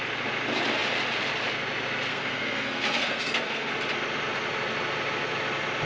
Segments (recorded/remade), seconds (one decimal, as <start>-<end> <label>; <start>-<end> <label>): 0.0-2.1 recorded; 2.1-3.7 remade; 3.7-5.9 recorded